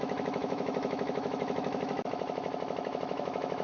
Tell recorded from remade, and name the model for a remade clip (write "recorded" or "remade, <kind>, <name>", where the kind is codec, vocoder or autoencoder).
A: remade, autoencoder, DAC-VAE